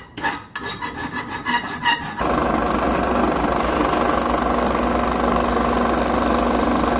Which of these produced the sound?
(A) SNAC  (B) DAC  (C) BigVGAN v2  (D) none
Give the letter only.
D